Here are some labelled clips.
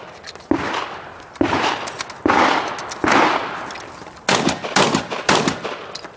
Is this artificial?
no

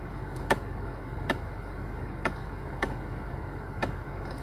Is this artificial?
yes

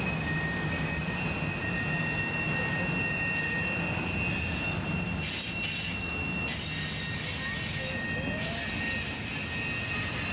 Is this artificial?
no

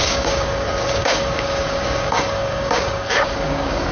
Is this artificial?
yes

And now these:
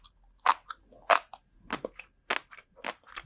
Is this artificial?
no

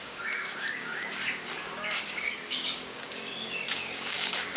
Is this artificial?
yes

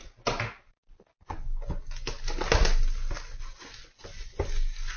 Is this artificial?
no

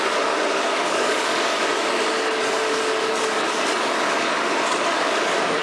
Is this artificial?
yes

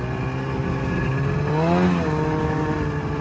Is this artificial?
no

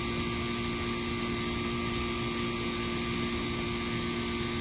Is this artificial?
no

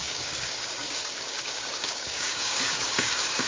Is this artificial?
yes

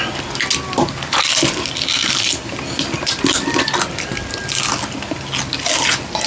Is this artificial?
no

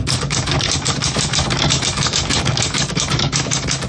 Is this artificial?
yes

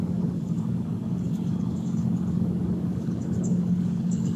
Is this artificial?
yes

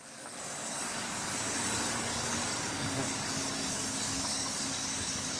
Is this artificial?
yes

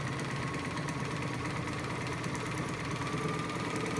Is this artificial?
no